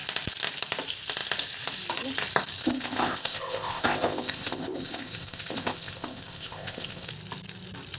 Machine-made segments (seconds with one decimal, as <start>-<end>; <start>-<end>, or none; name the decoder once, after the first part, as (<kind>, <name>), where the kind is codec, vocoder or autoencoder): 2.6-7.1 (codec, ZipCodec)